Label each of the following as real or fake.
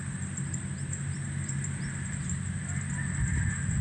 real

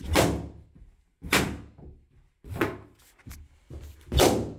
real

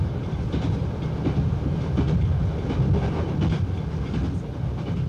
real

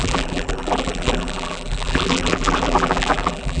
fake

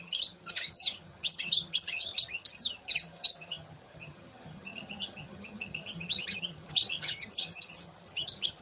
fake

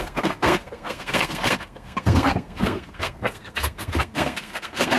fake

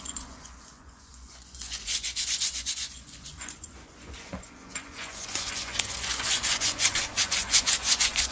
fake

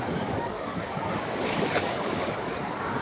fake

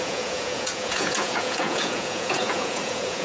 fake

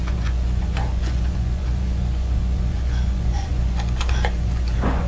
fake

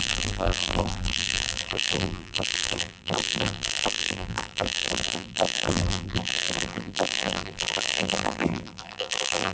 fake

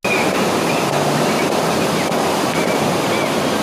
real